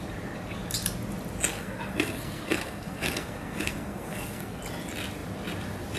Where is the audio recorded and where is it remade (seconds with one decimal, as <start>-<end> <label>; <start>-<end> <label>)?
0.0-1.5 recorded; 1.5-4.6 remade; 4.6-6.0 recorded